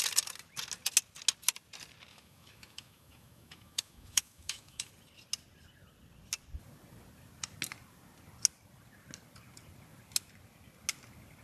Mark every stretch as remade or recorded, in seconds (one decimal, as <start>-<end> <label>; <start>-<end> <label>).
0.0-2.1 recorded; 2.1-4.9 remade; 4.9-11.4 recorded